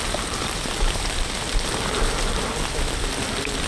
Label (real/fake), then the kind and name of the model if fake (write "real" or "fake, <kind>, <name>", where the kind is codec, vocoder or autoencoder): real